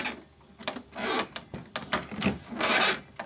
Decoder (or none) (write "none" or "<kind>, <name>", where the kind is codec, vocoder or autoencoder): none